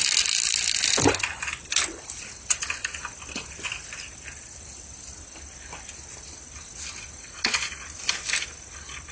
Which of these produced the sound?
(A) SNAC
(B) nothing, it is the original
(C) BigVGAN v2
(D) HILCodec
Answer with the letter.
B